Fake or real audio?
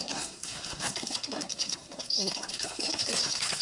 fake